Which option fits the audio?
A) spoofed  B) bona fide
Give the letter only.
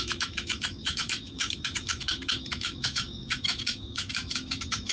A